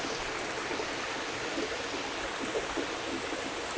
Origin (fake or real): real